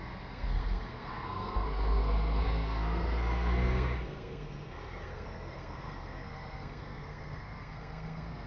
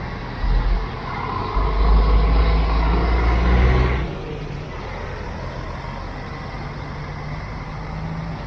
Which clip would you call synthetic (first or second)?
first